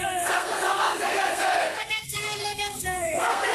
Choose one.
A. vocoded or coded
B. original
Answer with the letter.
A